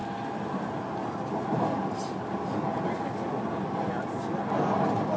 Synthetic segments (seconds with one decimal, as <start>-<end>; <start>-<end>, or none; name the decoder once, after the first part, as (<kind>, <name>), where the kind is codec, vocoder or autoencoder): none